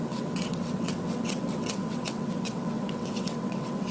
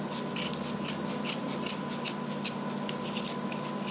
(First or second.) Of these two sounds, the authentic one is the second